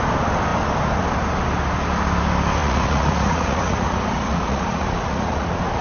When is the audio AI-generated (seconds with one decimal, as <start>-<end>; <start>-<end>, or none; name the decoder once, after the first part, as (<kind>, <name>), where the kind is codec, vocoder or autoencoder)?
2.6-5.8 (vocoder, Vocos)